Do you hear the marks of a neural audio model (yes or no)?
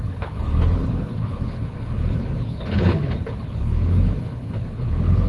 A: yes